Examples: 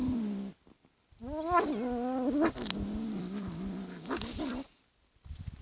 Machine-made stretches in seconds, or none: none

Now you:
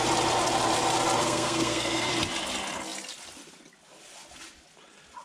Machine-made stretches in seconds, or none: 1.2-2.1 (codec, SNAC)

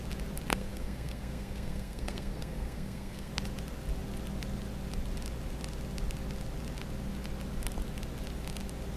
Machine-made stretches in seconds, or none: 0.5-3.3 (codec, SNAC)

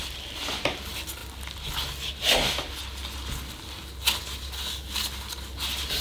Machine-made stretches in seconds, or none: none

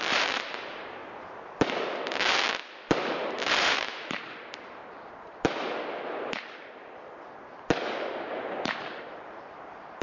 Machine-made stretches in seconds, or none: 0.0-1.0 (vocoder, BigVGAN v2); 3.0-4.8; 8.2-10.0

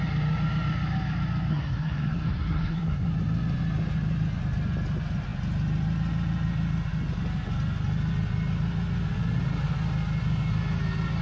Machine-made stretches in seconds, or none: 1.5-3.1 (codec, SNAC)

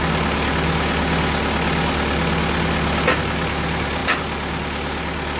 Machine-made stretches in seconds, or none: none

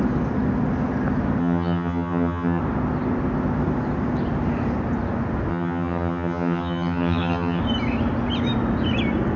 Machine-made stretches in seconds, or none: 1.4-2.6 (vocoder, HiFi-GAN); 5.5-7.6